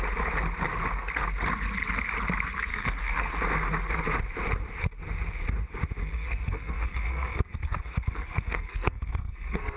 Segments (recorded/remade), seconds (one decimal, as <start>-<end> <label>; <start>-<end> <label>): 0.0-2.7 recorded; 2.7-3.3 remade; 3.3-6.0 recorded; 6.0-9.8 remade

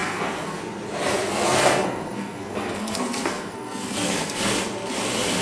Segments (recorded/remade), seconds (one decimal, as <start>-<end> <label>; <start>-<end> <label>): 0.0-0.6 remade; 0.6-1.2 recorded; 1.2-4.4 remade; 4.4-5.4 recorded

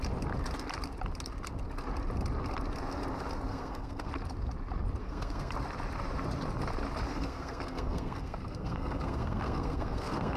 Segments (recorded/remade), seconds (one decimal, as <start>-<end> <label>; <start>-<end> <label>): 0.0-3.5 recorded; 3.5-4.1 remade; 4.1-5.0 recorded; 5.0-5.5 remade; 5.5-7.1 recorded; 7.1-10.4 remade

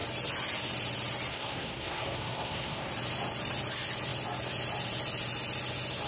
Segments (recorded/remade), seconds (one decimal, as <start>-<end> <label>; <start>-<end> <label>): 0.0-1.3 recorded; 1.3-2.9 remade; 2.9-6.1 recorded

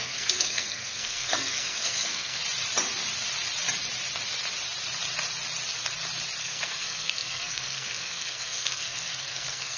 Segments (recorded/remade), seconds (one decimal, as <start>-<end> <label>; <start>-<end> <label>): 0.0-2.4 remade; 2.4-6.4 recorded; 6.4-9.8 remade

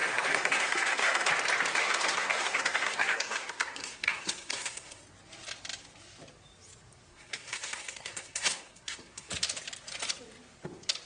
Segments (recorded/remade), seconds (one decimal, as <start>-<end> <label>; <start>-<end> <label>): 0.0-1.3 remade; 1.3-1.8 recorded; 1.8-5.0 remade; 5.0-7.1 recorded; 7.1-9.3 remade; 9.3-11.1 recorded

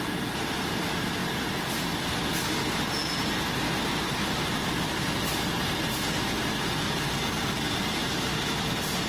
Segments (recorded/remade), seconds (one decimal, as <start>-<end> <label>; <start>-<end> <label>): 0.0-9.1 recorded

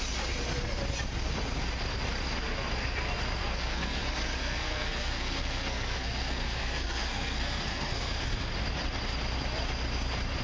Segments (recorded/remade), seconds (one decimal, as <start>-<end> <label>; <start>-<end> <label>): 0.0-3.4 recorded; 3.4-4.0 remade; 4.0-4.4 recorded; 4.4-8.5 remade; 8.5-10.4 recorded